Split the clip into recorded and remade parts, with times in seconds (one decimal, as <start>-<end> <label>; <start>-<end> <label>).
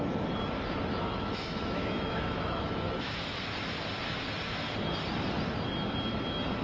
0.0-0.9 recorded; 0.9-3.4 remade; 3.4-6.6 recorded